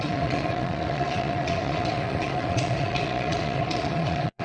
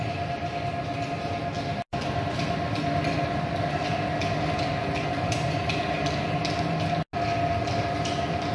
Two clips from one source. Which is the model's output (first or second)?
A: first